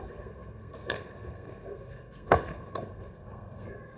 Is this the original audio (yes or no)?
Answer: no